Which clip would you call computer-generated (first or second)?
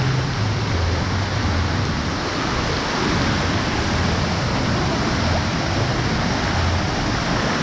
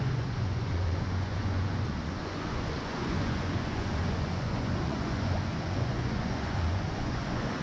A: second